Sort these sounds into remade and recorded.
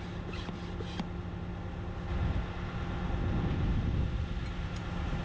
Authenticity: recorded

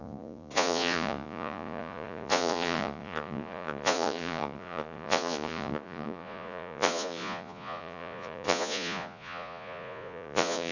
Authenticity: remade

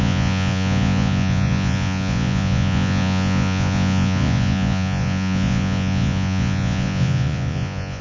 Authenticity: remade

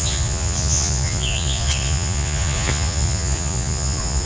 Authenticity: remade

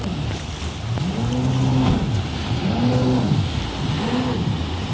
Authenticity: recorded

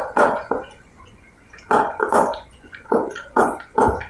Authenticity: remade